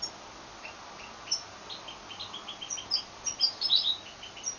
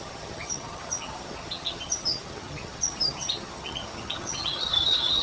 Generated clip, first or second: second